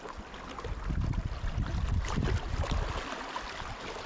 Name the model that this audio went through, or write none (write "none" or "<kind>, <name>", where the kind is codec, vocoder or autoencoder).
none